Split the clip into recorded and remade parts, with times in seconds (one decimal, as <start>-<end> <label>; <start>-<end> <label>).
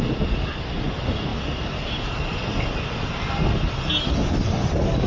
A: 0.0-5.1 recorded